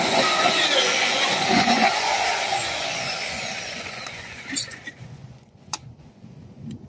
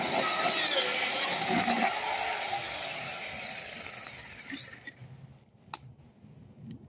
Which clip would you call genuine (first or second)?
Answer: second